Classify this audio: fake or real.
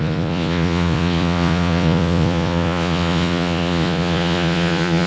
fake